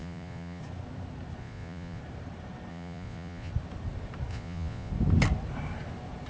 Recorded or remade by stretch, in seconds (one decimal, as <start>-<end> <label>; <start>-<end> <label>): 0.0-0.6 remade; 0.6-1.4 recorded; 1.4-2.0 remade; 2.0-2.7 recorded; 2.7-3.5 remade; 3.5-4.3 recorded; 4.3-4.9 remade; 4.9-6.3 recorded